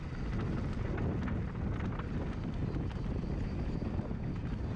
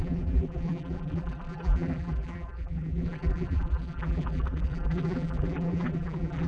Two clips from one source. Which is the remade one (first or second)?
second